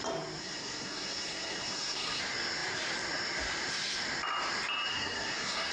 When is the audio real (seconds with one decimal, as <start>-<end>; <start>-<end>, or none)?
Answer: 0.0-0.4; 2.2-4.9